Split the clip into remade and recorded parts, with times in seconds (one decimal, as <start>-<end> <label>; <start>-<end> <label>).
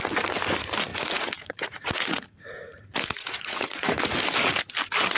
0.0-0.9 recorded; 0.9-4.0 remade; 4.0-5.2 recorded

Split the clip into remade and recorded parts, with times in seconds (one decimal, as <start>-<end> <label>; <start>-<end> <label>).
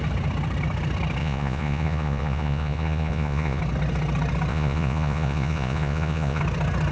0.0-1.2 recorded; 1.2-3.6 remade; 3.6-4.5 recorded; 4.5-6.4 remade; 6.4-6.9 recorded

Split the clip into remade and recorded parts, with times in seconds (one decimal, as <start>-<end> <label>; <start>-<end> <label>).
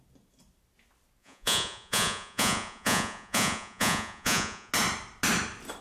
0.0-1.2 recorded; 1.2-4.7 remade; 4.7-5.8 recorded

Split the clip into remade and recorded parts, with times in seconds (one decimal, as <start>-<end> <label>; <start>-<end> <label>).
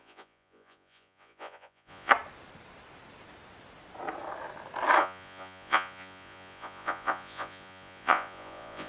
0.0-2.1 remade; 2.1-5.0 recorded; 5.0-8.9 remade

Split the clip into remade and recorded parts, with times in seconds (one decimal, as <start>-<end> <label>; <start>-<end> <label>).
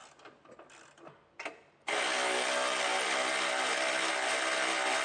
0.0-5.0 recorded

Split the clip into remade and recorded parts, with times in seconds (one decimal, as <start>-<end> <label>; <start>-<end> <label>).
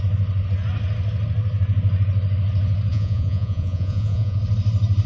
0.0-2.9 recorded; 2.9-4.4 remade; 4.4-5.1 recorded